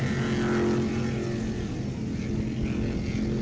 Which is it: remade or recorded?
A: recorded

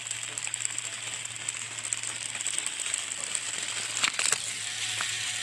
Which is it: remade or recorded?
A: remade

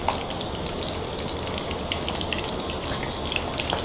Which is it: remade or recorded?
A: recorded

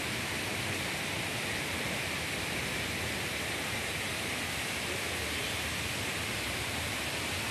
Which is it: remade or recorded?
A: remade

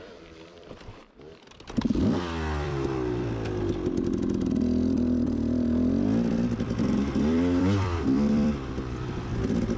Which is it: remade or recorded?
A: remade